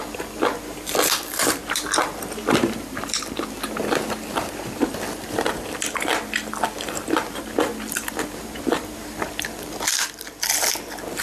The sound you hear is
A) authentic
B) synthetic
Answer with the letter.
B